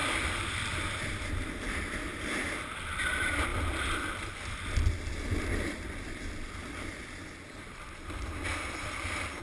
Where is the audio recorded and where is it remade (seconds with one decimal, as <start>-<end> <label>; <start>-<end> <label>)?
0.0-1.2 remade; 1.2-2.1 recorded; 2.1-3.0 remade; 3.0-9.4 recorded